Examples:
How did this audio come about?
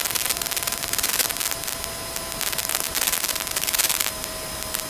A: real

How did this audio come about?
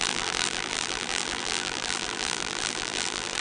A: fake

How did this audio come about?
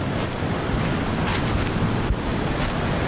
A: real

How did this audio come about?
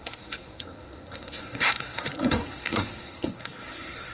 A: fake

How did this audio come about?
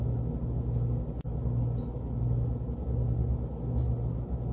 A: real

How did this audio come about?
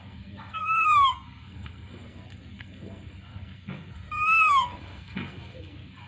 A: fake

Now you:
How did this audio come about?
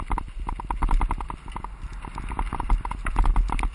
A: real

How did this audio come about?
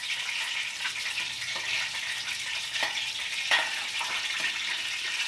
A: real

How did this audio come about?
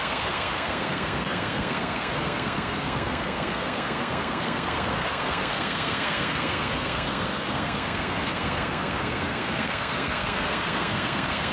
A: fake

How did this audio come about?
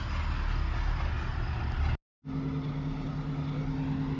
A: real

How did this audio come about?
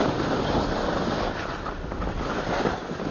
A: real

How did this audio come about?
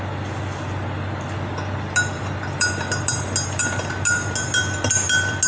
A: real